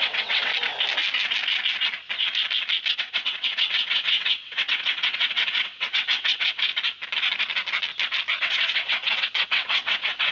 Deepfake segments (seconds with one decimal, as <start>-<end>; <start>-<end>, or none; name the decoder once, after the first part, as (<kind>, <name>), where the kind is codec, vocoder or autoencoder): 0.0-0.5 (vocoder, WaveNeXt); 2.9-6.7; 8.4-10.3

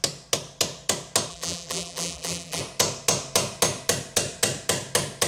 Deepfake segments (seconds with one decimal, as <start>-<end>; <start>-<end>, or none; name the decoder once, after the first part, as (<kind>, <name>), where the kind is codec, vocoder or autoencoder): 1.3-2.6 (vocoder, BigVGAN v2)